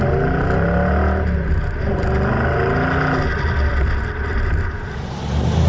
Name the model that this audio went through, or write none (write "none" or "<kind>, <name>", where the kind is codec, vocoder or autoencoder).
none